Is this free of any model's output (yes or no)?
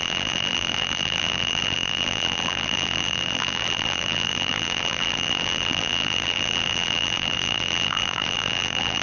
no